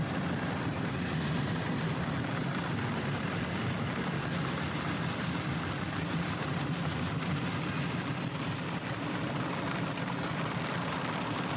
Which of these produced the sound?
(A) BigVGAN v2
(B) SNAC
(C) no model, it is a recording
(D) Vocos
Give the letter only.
A